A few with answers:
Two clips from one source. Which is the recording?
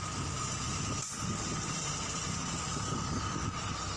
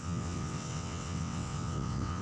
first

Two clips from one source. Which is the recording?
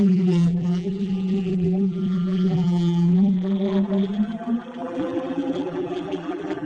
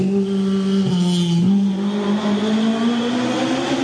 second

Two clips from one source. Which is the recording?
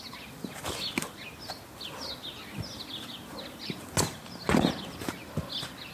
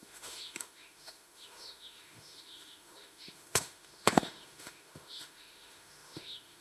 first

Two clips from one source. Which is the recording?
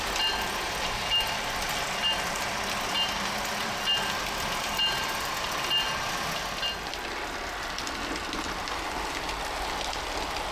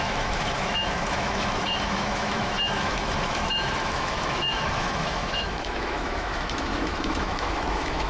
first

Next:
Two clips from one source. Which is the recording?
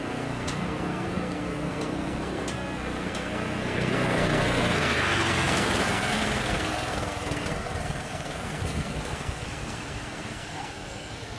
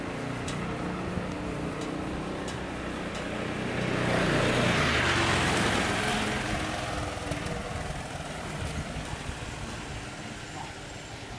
second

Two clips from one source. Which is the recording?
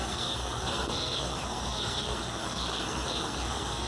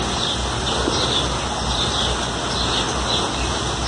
second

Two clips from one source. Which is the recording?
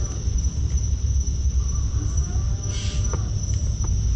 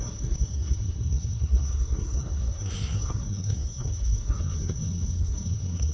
first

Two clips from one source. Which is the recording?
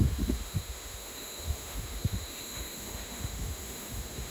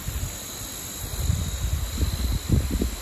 second